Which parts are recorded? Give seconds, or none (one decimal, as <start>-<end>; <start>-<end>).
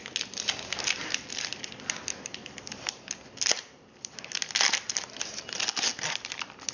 0.0-1.5; 4.2-5.9